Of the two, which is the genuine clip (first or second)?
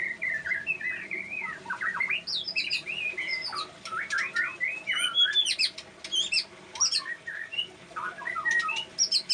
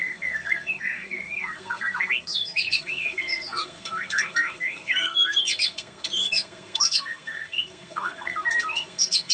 first